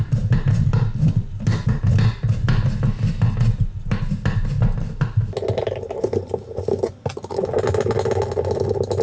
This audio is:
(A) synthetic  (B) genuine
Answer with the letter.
B